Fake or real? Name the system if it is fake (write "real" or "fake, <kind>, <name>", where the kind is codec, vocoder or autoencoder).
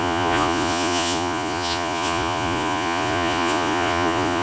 fake, vocoder, Vocos